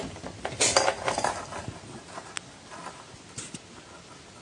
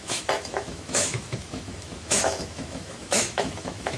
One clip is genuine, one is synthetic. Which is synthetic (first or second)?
second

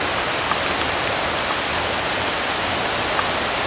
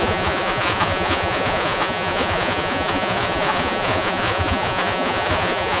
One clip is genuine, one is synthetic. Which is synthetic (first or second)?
second